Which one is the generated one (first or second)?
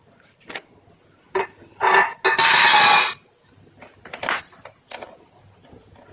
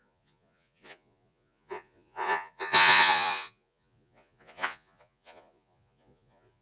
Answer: second